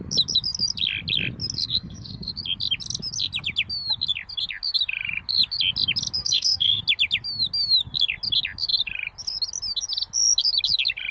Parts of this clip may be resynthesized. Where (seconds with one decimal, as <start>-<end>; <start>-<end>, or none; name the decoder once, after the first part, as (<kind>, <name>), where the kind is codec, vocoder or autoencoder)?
1.6-2.3 (codec, SNAC); 6.2-6.8